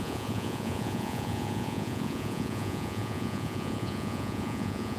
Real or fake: fake